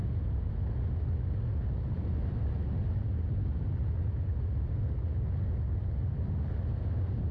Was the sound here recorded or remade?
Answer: recorded